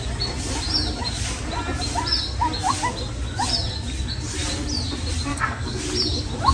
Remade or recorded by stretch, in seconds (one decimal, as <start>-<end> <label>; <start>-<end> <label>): 0.0-5.3 recorded; 5.3-5.8 remade; 5.8-6.5 recorded